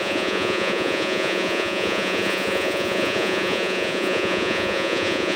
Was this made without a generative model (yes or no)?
no